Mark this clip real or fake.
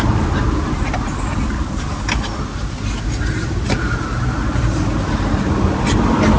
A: real